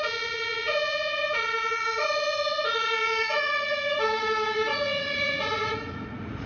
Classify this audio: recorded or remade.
remade